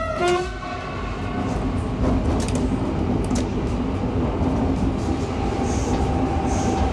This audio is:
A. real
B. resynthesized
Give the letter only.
A